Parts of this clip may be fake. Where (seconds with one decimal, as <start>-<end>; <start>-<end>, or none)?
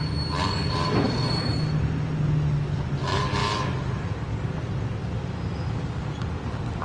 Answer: none